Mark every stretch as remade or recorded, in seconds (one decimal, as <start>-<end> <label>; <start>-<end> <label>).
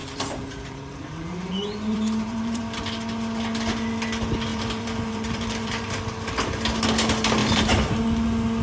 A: 0.0-2.6 remade; 2.6-4.5 recorded; 4.5-5.9 remade; 5.9-7.4 recorded; 7.4-8.0 remade; 8.0-8.6 recorded